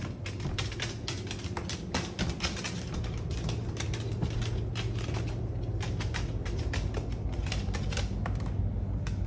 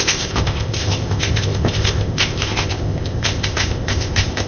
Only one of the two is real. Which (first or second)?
first